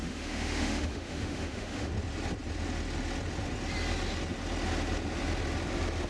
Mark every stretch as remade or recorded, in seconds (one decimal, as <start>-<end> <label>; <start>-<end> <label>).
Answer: 0.0-1.9 remade; 1.9-6.1 recorded